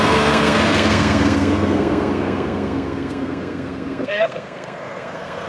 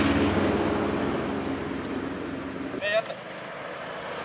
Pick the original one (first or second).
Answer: second